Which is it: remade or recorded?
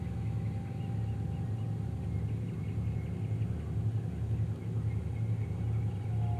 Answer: recorded